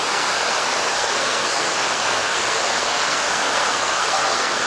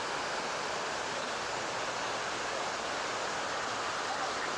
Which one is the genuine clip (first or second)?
second